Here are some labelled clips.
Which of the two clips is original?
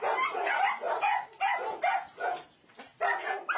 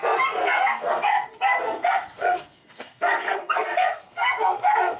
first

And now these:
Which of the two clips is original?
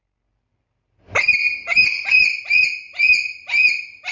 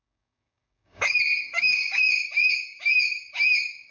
first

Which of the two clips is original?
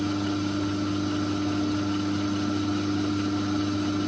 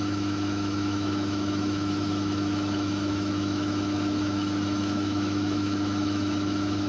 first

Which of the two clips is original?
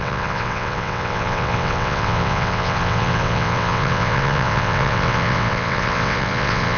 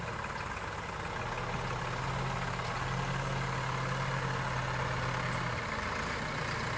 second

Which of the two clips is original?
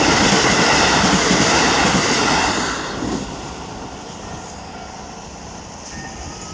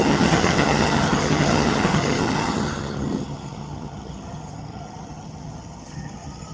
first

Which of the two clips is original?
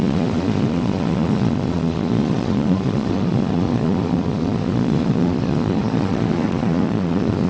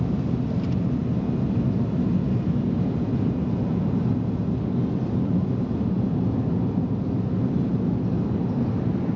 second